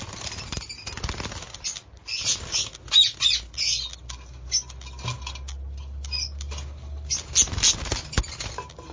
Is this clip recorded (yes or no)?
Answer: yes